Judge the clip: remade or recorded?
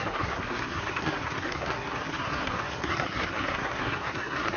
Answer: remade